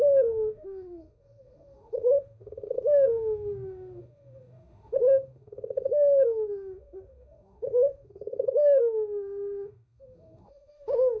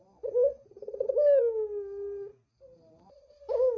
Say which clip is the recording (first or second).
second